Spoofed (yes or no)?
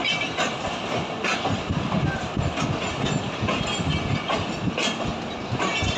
no